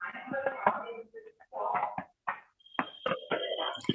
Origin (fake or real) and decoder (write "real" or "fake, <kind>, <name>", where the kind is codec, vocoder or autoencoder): real